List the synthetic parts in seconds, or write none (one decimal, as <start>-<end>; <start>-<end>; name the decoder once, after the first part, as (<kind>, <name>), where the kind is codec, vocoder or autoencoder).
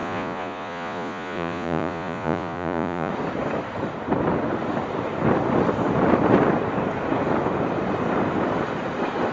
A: 0.0-3.1 (vocoder, Vocos)